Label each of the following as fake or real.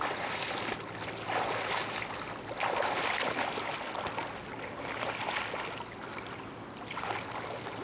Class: real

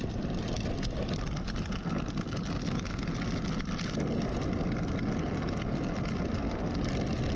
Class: real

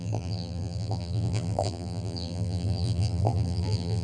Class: fake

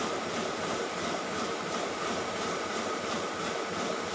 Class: fake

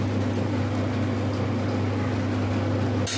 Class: real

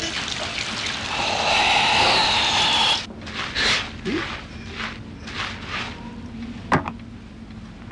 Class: real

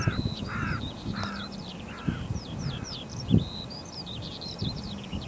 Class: fake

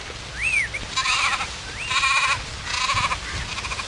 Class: real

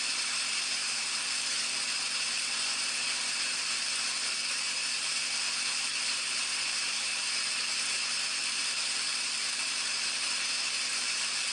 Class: fake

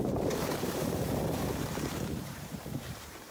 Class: fake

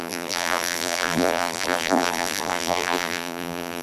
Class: fake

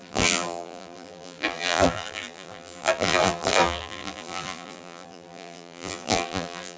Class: fake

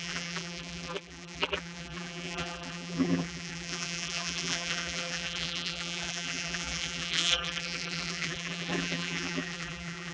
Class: fake